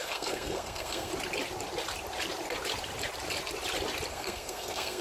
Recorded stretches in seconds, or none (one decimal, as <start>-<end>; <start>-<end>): 1.1-4.1